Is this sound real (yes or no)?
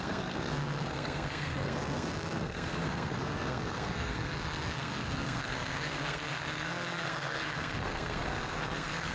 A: no